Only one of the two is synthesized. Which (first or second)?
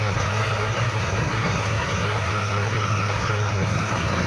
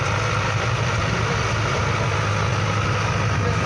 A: first